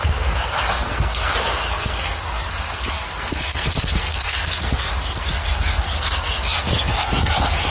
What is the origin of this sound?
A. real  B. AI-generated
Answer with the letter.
B